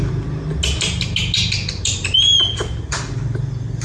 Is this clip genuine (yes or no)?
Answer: yes